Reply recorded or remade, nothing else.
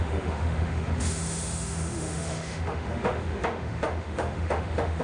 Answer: remade